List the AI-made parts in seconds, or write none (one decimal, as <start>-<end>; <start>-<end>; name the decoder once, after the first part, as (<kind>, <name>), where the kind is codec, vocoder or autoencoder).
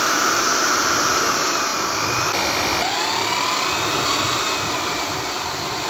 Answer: 0.0-0.5 (vocoder, BigVGAN v2); 1.2-1.7; 4.4-5.9